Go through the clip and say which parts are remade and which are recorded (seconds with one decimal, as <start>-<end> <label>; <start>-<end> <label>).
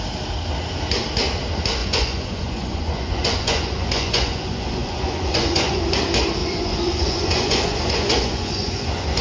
0.0-1.8 recorded; 1.8-5.8 remade; 5.8-6.4 recorded; 6.4-9.2 remade